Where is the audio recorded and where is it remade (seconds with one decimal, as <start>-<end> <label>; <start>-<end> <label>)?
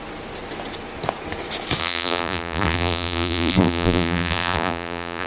0.0-1.8 recorded; 1.8-5.3 remade